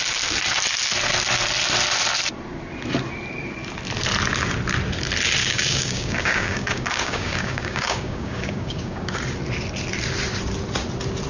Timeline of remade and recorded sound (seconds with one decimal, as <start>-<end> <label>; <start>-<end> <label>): 0.0-5.4 recorded; 5.4-9.2 remade; 9.2-11.3 recorded